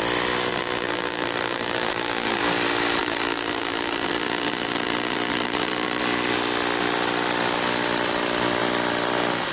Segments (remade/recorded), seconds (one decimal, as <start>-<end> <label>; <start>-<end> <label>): 0.0-0.5 recorded; 0.5-2.4 remade; 2.4-3.0 recorded; 3.0-6.0 remade; 6.0-9.5 recorded